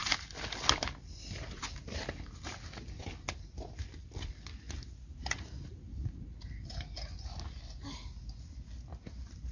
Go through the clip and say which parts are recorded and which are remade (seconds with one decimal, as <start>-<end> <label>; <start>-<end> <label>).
0.0-9.5 recorded